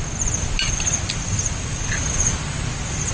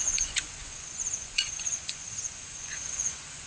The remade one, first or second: second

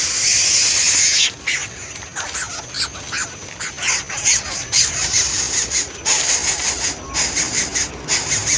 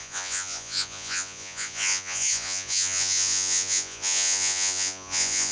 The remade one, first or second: second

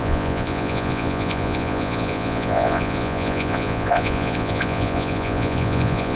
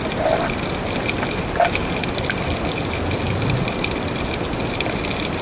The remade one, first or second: first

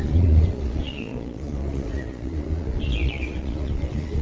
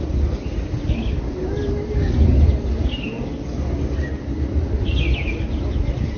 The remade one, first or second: first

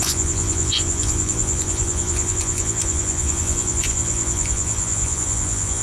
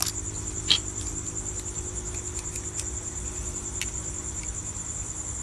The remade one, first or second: first